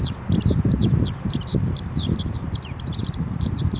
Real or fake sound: fake